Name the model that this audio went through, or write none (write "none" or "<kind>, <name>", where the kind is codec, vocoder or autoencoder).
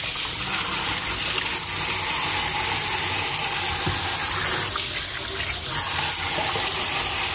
none